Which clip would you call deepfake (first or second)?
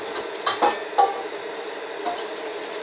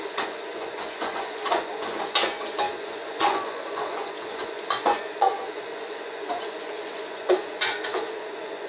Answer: second